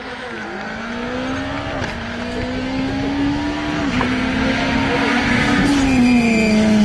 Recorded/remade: recorded